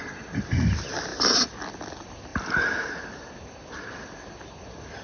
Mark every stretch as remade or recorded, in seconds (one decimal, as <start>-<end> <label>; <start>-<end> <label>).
0.0-5.0 recorded